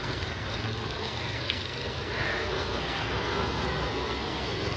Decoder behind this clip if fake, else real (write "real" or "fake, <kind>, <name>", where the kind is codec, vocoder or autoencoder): fake, codec, SNAC